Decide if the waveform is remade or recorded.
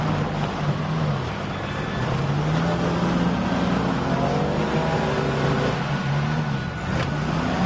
recorded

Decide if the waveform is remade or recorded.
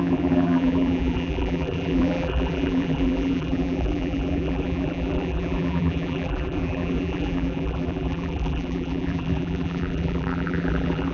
remade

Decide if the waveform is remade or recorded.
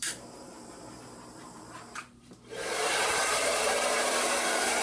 remade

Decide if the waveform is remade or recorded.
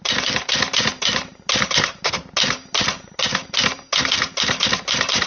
remade